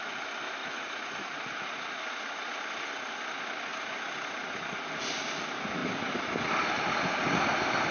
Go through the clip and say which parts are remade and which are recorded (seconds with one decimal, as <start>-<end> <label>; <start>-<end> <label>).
0.0-0.6 recorded; 0.6-2.0 remade; 2.0-7.9 recorded